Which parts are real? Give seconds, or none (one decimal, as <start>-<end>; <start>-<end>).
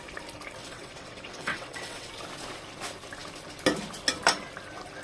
0.0-0.6; 2.1-5.0